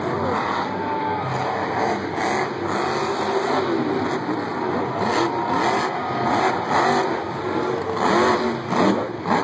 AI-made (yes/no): no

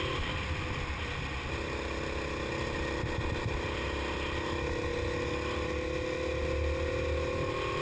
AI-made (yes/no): no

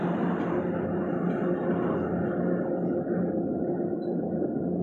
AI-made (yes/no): no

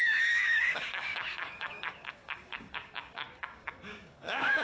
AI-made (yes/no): yes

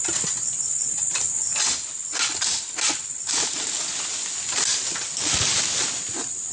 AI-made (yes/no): no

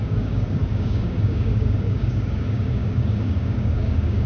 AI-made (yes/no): yes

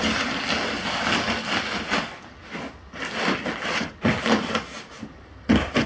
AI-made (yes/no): no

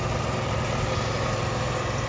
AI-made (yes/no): no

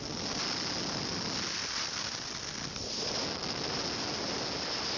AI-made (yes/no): no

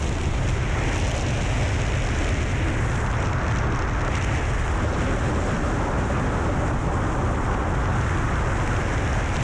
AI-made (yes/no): no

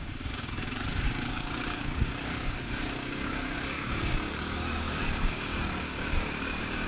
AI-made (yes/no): yes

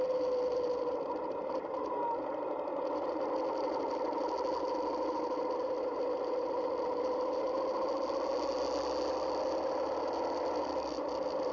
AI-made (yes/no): no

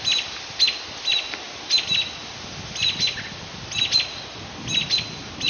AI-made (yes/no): no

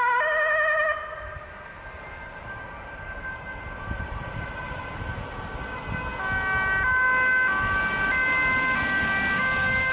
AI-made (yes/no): no